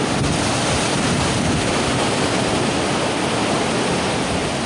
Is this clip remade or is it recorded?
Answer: recorded